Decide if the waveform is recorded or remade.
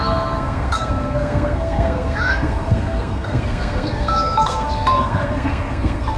remade